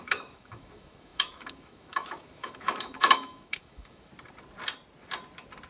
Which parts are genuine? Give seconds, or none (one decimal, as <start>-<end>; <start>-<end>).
4.1-5.7